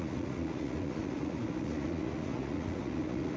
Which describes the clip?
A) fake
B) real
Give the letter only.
A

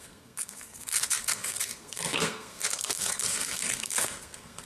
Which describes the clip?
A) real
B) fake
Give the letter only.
B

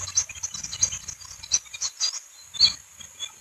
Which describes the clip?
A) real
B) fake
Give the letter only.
A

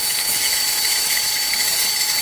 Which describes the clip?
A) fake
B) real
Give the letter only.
A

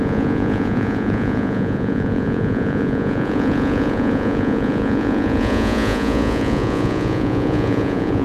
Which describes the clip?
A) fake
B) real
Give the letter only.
A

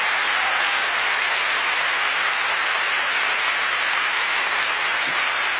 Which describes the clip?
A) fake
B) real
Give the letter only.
B